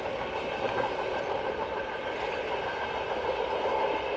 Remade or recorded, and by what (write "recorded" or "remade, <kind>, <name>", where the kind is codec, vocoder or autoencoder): remade, vocoder, BigVGAN v2